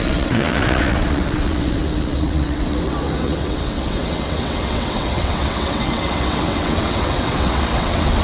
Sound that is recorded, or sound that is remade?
remade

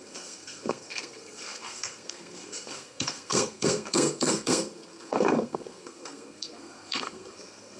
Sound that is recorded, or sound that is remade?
remade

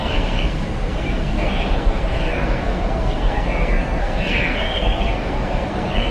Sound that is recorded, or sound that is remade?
remade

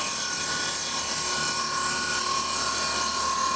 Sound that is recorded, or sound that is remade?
recorded